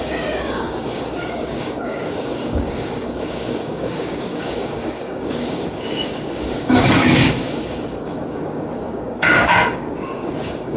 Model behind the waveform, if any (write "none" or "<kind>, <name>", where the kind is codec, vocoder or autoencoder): codec, DAC